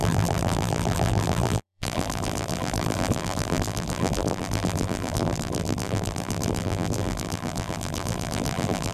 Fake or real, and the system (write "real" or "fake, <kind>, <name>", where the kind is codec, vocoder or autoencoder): fake, vocoder, BigVGAN v2